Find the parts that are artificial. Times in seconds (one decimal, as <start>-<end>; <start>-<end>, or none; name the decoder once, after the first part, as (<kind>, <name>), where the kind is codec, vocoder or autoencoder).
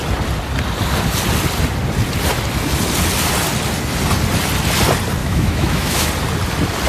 5.2-6.1 (autoencoder, DAC-VAE)